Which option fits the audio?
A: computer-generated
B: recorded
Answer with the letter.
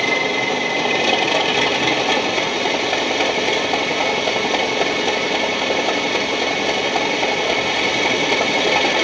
B